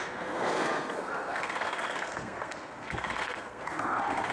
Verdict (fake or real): fake